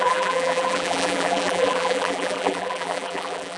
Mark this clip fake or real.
fake